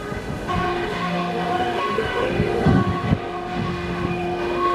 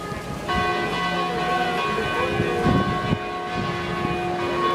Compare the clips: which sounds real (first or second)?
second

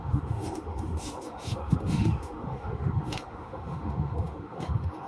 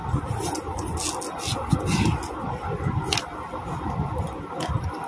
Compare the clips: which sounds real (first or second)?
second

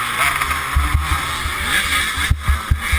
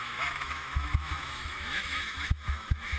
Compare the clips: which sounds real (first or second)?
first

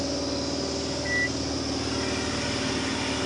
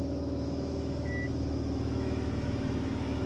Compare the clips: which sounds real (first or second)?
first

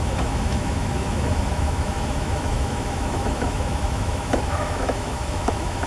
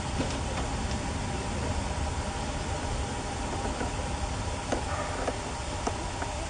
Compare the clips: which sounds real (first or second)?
second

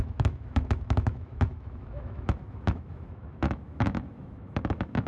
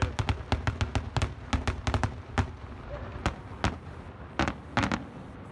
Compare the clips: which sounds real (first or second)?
second